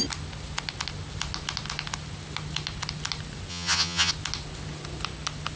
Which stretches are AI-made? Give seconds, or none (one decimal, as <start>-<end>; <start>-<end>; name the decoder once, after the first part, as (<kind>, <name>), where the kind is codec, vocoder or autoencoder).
3.5-4.1 (vocoder, HiFi-GAN)